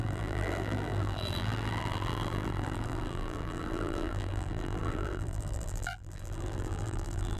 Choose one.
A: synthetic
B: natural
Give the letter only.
A